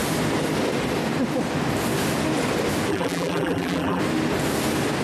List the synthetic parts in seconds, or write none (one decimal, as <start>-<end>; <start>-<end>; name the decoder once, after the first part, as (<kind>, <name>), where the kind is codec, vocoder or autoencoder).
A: 2.9-4.0 (vocoder, BigVGAN v2)